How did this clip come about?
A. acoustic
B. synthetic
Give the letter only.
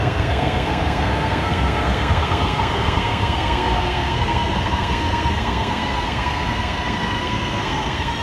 B